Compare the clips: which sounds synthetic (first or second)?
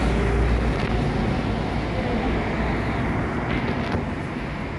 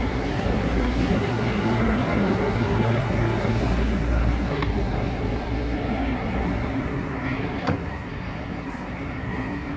second